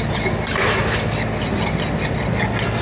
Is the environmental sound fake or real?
real